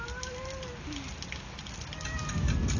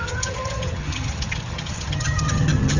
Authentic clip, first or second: first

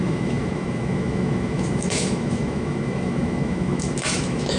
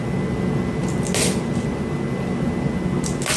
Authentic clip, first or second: second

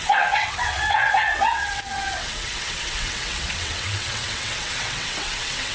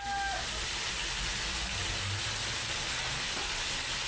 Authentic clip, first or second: second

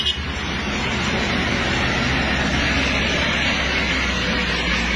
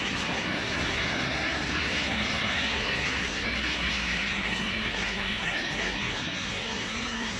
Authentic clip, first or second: first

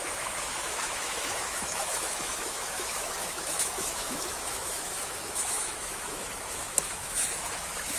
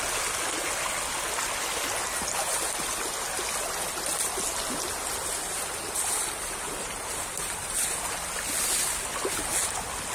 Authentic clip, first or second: second